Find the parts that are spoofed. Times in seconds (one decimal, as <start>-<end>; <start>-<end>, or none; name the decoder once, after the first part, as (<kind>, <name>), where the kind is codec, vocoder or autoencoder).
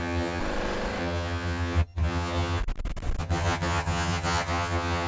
0.0-0.4 (vocoder, HiFi-GAN); 1.0-2.6; 3.2-5.1